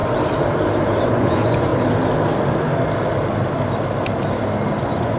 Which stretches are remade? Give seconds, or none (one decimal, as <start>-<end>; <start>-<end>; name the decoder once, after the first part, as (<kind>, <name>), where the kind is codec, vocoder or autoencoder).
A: 1.0-1.7 (vocoder, Vocos); 4.8-5.2